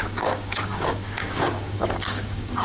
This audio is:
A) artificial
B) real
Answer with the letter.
A